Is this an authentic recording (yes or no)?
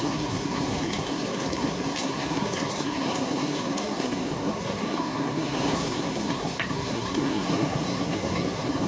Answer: no